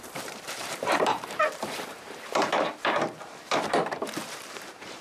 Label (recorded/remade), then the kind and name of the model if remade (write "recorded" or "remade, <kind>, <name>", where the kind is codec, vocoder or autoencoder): remade, vocoder, BigVGAN v2